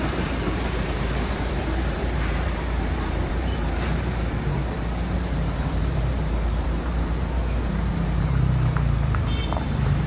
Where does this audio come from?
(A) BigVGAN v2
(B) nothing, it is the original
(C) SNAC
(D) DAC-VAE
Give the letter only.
A